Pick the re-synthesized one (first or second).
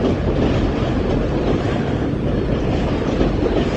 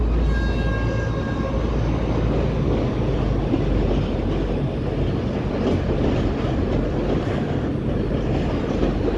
first